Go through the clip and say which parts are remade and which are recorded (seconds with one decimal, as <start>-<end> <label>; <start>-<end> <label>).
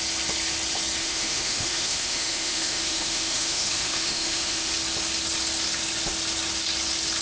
0.0-1.0 recorded; 1.0-4.7 remade; 4.7-7.2 recorded